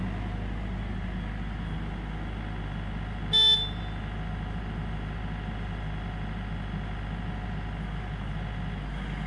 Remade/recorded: recorded